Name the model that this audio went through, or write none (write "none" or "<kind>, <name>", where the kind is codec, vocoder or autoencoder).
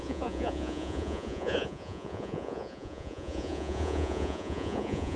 vocoder, Vocos